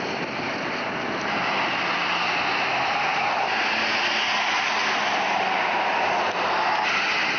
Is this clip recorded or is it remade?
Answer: recorded